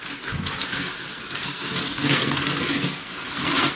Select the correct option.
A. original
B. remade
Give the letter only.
B